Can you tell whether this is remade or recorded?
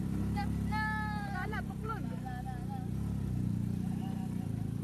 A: remade